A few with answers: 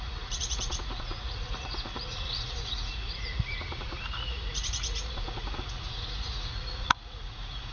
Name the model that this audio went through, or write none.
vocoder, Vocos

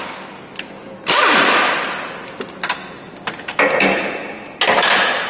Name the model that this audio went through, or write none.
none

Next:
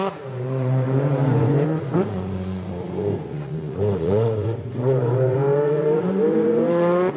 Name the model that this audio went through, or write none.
vocoder, Vocos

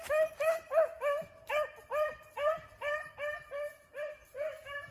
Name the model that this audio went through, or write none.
none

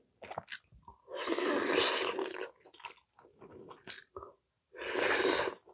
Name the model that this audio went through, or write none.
none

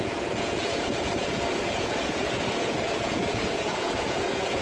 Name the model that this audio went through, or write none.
vocoder, Vocos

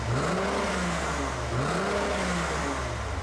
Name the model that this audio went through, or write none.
none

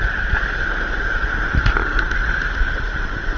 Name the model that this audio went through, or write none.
none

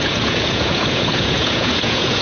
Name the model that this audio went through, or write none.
vocoder, Vocos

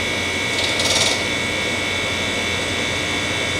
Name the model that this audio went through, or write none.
none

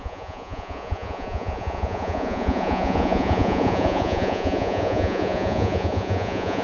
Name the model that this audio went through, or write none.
vocoder, Vocos